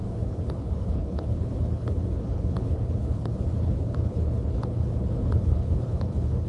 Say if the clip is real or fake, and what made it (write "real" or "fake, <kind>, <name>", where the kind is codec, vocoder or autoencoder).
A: fake, codec, HILCodec